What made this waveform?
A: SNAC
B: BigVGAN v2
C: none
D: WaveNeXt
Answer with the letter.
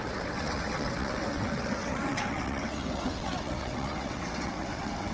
D